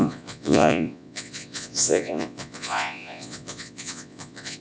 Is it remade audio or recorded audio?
remade